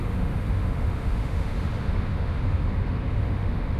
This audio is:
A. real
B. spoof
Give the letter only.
B